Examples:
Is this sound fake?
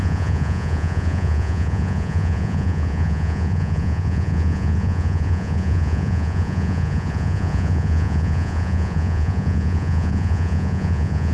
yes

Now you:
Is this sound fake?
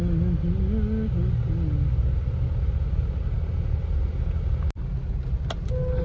no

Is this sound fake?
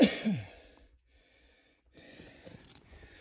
yes